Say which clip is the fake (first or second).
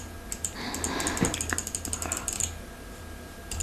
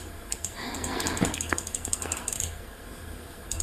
second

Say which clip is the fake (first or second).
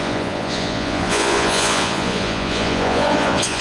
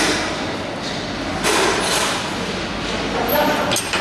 first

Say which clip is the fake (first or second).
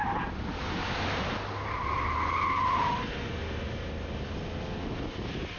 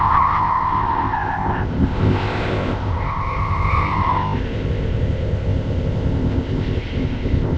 second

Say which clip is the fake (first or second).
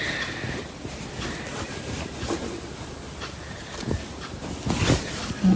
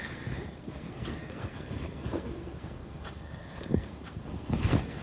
second